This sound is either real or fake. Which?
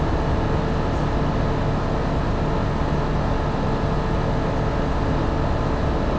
real